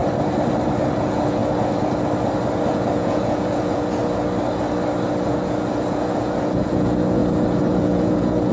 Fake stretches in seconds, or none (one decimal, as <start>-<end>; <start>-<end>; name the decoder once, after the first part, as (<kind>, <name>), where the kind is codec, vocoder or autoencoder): 0.9-1.4 (vocoder, Vocos); 2.7-4.0; 5.3-8.5